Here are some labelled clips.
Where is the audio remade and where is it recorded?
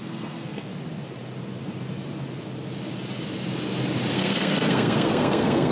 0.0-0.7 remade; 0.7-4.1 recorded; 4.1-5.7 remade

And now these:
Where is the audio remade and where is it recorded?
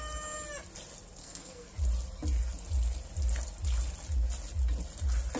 0.0-1.2 recorded; 1.2-1.7 remade; 1.7-5.4 recorded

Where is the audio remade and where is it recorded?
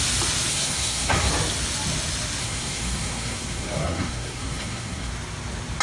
0.0-0.5 recorded; 0.5-1.3 remade; 1.3-2.4 recorded; 2.4-5.1 remade; 5.1-5.8 recorded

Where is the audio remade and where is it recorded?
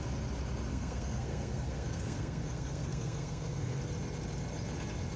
0.0-0.7 recorded; 0.7-3.8 remade; 3.8-5.2 recorded